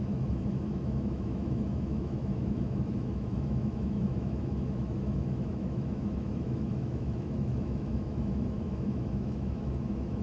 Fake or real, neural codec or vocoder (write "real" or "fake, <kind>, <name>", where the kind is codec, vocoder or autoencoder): fake, autoencoder, DAC-VAE